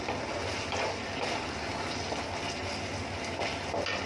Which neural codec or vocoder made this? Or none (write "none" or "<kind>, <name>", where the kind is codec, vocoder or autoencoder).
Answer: none